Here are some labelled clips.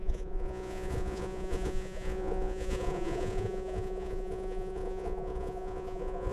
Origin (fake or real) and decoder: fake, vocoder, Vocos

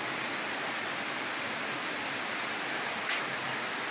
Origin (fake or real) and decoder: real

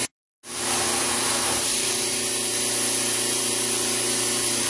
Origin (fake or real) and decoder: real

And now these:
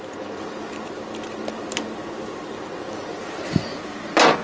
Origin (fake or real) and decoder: real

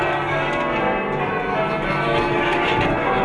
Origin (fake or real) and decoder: real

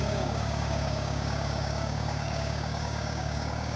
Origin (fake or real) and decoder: fake, codec, DAC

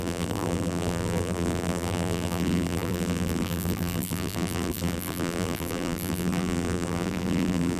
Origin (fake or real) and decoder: fake, vocoder, BigVGAN v2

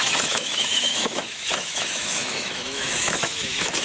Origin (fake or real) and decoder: fake, autoencoder, DAC-VAE